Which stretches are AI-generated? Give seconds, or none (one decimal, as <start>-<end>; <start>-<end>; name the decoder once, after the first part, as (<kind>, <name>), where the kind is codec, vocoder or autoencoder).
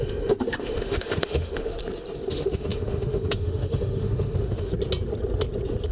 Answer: 0.0-1.7 (autoencoder, DAC-VAE); 2.3-4.7